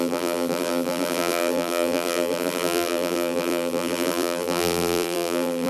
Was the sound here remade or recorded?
remade